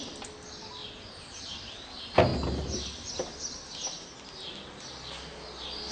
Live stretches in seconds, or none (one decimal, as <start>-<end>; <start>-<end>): 0.0-0.8; 1.6-5.9